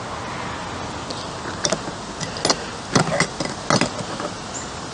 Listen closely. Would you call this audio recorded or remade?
recorded